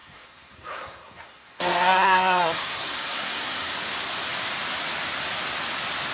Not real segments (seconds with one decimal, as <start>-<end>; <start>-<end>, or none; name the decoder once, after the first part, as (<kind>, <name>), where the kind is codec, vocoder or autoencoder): 0.0-3.7 (codec, SNAC)